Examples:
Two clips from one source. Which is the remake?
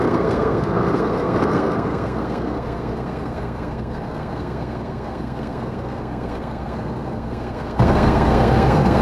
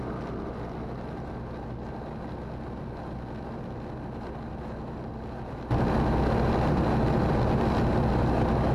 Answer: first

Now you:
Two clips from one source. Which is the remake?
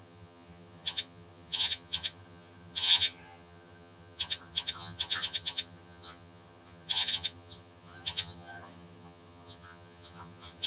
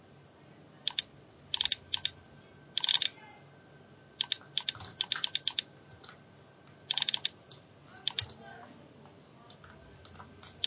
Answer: first